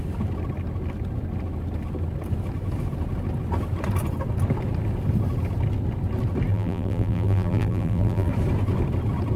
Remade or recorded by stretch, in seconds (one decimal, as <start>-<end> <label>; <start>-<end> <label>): 0.0-6.5 recorded; 6.5-8.3 remade; 8.3-9.4 recorded